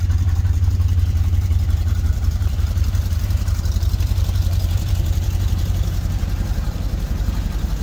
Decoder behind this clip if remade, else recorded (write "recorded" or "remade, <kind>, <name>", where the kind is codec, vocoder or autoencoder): remade, vocoder, BigVGAN v2